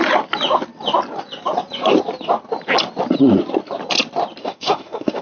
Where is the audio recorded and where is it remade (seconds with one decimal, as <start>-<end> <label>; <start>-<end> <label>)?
0.0-4.4 recorded; 4.4-5.2 remade

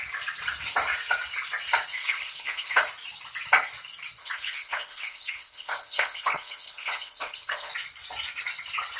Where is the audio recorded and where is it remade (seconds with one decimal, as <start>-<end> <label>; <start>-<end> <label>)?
0.0-1.9 recorded; 1.9-2.8 remade; 2.8-4.2 recorded; 4.2-7.7 remade; 7.7-9.0 recorded

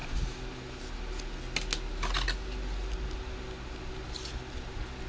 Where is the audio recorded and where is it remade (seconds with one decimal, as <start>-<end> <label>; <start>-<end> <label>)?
0.0-5.1 recorded

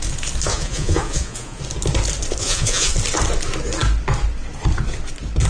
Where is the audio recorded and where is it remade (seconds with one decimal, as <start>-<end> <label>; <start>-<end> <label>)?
0.0-0.5 recorded; 0.5-1.6 remade; 1.6-2.4 recorded; 2.4-2.9 remade; 2.9-5.5 recorded